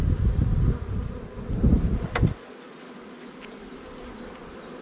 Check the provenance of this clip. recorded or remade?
recorded